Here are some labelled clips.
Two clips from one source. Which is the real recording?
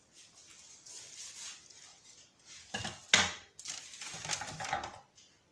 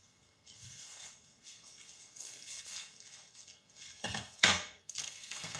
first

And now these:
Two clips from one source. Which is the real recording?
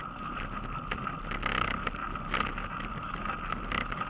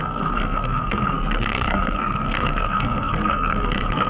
first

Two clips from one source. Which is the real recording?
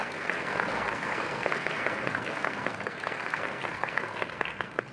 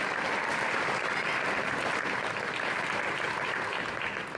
second